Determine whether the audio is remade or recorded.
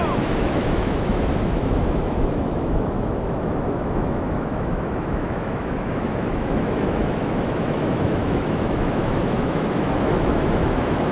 remade